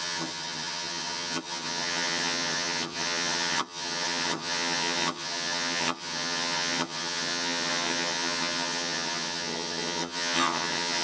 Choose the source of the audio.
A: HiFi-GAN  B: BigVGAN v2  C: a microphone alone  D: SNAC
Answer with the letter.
A